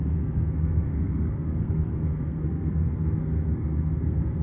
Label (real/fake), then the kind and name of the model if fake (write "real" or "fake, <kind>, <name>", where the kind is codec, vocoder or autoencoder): fake, codec, SNAC